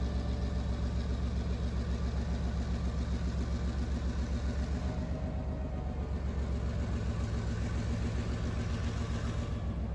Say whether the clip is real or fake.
real